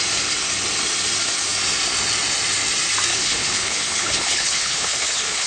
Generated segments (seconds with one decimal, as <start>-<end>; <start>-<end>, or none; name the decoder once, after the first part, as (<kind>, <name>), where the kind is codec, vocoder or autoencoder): 3.1-5.5 (codec, HILCodec)